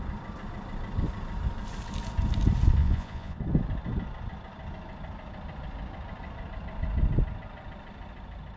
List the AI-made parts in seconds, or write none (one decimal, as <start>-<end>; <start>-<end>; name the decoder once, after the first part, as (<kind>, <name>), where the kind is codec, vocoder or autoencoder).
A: 2.8-3.4 (vocoder, Vocos)